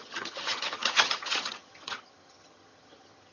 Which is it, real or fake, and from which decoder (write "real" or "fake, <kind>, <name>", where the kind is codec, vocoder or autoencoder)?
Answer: fake, vocoder, HiFi-GAN